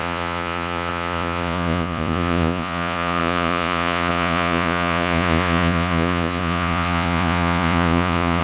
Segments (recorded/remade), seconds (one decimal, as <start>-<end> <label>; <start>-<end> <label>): 0.0-8.4 remade